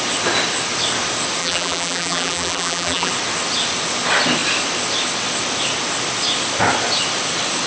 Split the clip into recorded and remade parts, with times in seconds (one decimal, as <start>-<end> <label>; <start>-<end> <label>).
0.0-1.4 recorded; 1.4-3.1 remade; 3.1-7.7 recorded

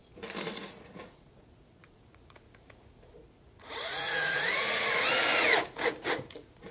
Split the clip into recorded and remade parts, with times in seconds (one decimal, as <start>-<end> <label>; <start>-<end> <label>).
0.0-0.5 recorded; 0.5-6.7 remade

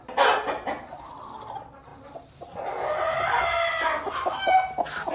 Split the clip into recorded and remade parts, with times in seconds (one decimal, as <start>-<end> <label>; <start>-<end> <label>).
0.0-5.1 recorded

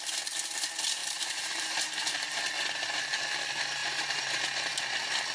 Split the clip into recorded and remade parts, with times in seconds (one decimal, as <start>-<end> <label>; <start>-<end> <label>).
0.0-1.0 recorded; 1.0-2.4 remade; 2.4-3.8 recorded; 3.8-4.4 remade; 4.4-5.3 recorded

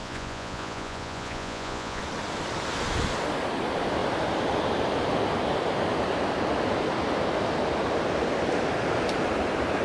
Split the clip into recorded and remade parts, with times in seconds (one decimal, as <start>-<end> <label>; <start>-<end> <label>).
0.0-2.0 remade; 2.0-9.8 recorded